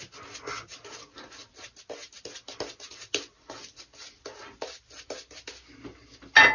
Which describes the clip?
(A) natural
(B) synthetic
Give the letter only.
A